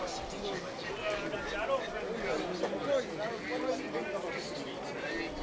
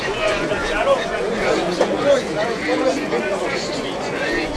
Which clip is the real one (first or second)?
first